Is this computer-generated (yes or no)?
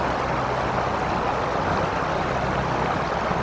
no